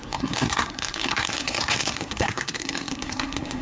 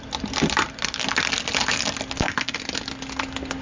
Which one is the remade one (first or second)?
first